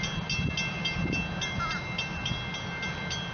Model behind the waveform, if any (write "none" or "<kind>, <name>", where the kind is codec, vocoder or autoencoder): none